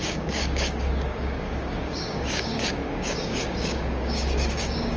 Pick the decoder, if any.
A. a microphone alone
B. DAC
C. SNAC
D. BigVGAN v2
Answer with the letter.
B